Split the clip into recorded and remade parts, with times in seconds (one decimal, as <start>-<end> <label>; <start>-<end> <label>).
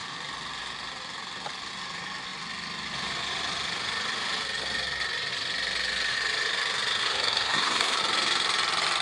0.0-7.0 recorded; 7.0-8.0 remade; 8.0-9.0 recorded